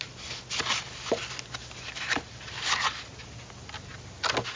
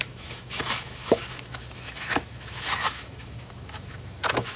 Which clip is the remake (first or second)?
second